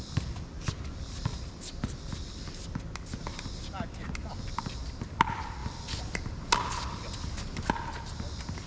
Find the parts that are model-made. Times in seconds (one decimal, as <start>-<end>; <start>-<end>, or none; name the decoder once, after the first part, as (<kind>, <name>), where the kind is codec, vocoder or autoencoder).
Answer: none